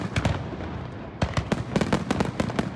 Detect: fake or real real